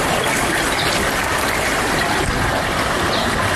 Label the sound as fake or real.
real